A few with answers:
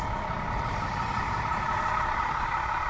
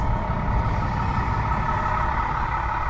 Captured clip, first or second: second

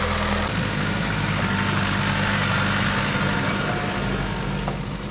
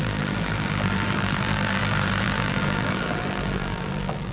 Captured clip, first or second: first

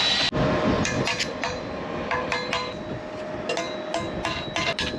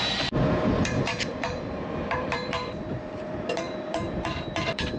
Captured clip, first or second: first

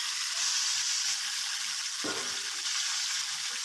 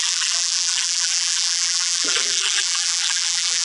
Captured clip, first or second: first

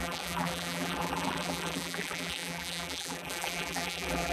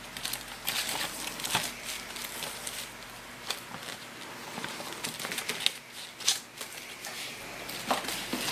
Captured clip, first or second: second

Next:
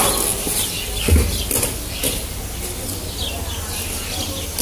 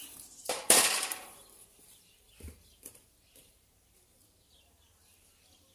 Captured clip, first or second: first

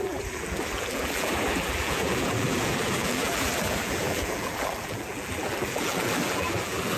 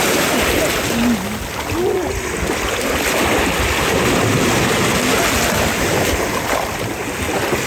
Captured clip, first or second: second